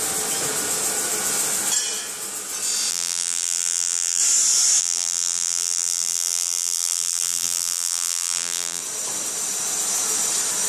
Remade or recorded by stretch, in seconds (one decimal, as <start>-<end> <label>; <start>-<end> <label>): 0.0-2.9 recorded; 2.9-4.2 remade; 4.2-4.8 recorded; 4.8-8.8 remade; 8.8-10.7 recorded